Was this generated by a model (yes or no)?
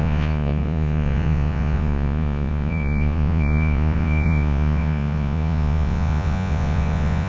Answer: yes